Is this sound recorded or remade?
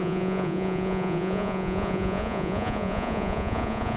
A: remade